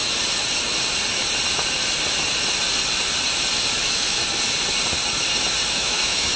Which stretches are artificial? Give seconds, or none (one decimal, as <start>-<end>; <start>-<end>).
3.8-4.2; 5.7-6.4